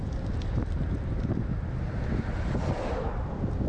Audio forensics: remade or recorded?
recorded